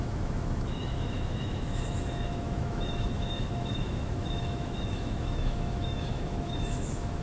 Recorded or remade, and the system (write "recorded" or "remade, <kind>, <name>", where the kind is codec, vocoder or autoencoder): remade, autoencoder, DAC-VAE